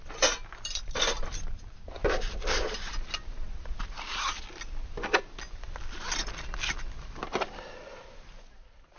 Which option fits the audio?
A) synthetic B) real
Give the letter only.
B